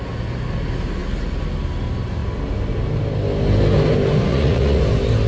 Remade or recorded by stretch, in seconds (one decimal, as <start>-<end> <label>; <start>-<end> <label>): 0.0-4.3 recorded; 4.3-4.8 remade; 4.8-5.3 recorded